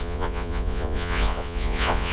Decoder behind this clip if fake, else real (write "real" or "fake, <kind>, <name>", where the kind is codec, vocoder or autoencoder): fake, vocoder, Vocos